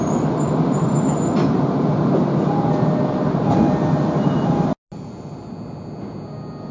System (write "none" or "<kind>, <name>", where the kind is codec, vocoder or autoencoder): none